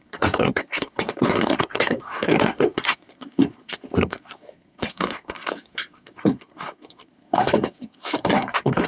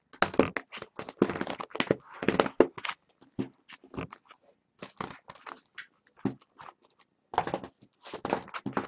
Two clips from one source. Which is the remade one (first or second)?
first